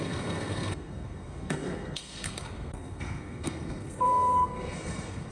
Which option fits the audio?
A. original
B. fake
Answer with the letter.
B